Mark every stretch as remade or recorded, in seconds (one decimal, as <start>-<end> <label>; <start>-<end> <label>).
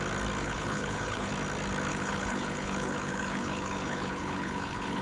0.0-0.4 recorded; 0.4-1.3 remade; 1.3-1.9 recorded; 1.9-5.0 remade